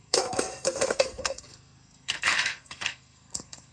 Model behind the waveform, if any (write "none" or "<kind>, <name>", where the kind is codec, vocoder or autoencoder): codec, SNAC